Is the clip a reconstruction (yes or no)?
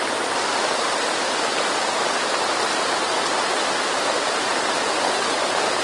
no